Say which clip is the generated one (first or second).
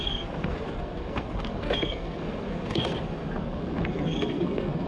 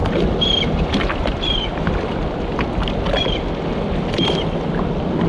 first